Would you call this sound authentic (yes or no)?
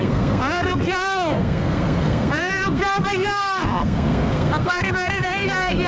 no